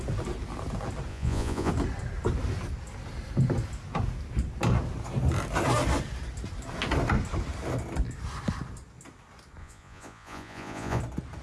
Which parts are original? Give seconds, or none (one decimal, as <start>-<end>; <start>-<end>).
0.0-1.1; 1.7-9.6; 11.0-11.4

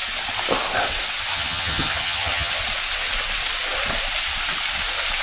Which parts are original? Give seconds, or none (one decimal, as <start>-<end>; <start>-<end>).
0.0-1.3; 2.6-5.2

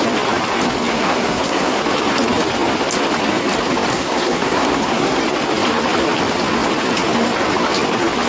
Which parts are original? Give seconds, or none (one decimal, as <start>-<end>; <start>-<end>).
0.0-0.9; 1.8-3.9; 5.2-8.3

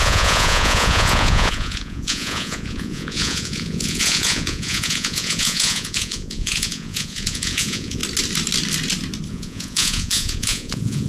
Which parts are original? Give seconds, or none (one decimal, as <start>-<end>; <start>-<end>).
8.0-9.3

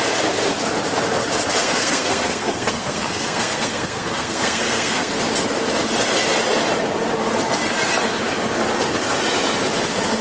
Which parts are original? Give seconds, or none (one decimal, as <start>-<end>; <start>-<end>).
0.0-1.6; 5.1-10.2

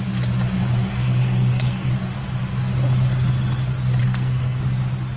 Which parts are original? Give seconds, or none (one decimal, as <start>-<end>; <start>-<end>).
0.0-1.0; 1.9-4.0; 4.6-5.2

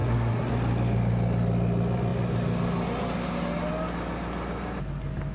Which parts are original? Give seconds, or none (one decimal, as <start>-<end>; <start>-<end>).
0.5-5.3

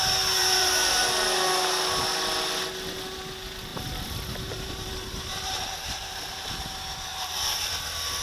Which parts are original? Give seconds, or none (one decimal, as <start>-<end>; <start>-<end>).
0.0-0.4; 1.0-3.7; 6.2-7.1; 7.7-8.2